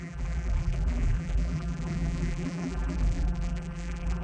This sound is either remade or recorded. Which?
remade